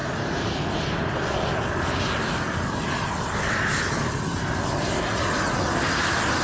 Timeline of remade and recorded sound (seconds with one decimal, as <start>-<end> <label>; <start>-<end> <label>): 0.0-6.4 recorded